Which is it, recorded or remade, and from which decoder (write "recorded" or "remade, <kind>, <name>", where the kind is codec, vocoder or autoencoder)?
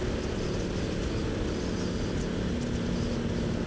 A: recorded